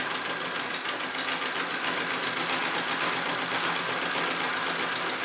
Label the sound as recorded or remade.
recorded